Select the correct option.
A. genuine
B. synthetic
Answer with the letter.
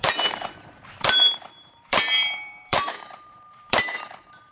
B